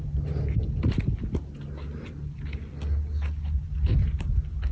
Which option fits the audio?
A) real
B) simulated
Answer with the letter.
A